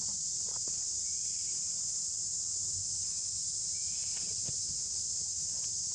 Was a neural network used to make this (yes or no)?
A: yes